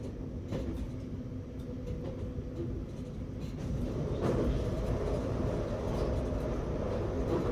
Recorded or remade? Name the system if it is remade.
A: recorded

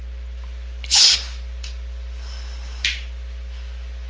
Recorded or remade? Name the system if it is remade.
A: recorded